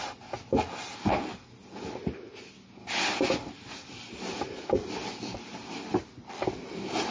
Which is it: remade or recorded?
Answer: recorded